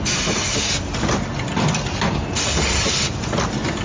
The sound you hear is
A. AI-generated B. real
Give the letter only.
B